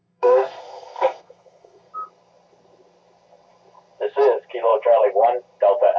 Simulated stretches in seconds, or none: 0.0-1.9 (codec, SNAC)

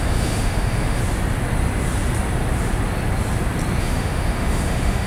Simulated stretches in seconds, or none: 0.0-1.0 (autoencoder, DAC-VAE); 3.8-5.1

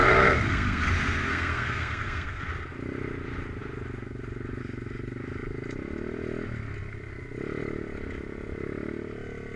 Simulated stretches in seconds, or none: 0.0-0.9 (codec, SNAC); 1.3-2.4